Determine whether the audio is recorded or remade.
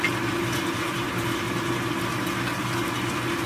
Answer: recorded